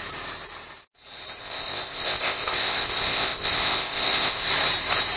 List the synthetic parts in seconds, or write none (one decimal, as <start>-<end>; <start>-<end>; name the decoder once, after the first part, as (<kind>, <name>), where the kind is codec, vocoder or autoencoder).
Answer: 1.4-4.5 (codec, ZipCodec)